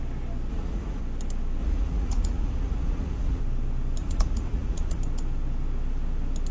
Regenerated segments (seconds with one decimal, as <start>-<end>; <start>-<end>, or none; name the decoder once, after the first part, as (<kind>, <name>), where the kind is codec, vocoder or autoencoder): 0.5-1.0 (vocoder, Vocos); 1.6-3.4; 4.0-5.0